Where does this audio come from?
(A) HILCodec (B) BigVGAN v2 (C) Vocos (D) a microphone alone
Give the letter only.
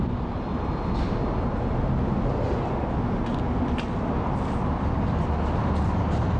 D